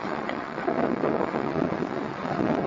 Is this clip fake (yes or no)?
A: yes